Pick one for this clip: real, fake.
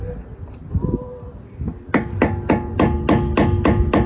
real